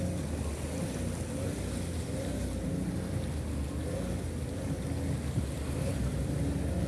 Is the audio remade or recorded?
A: recorded